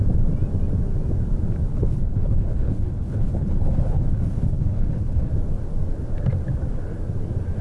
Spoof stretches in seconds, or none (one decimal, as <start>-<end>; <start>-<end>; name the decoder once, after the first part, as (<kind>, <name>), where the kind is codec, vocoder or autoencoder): 1.7-5.3 (codec, HILCodec)